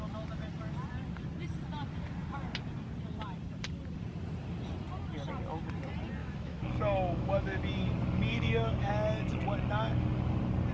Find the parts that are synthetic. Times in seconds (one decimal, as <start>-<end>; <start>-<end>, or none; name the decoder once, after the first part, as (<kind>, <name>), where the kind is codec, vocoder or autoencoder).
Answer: 6.2-7.6 (autoencoder, DAC-VAE); 8.3-8.9